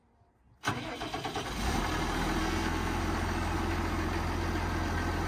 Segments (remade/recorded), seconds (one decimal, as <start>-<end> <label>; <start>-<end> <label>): 0.0-2.4 recorded; 2.4-3.0 remade; 3.0-5.3 recorded